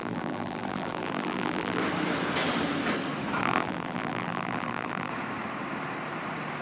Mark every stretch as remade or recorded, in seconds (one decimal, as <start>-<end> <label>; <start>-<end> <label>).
0.0-1.8 remade; 1.8-3.4 recorded; 3.4-5.1 remade; 5.1-6.6 recorded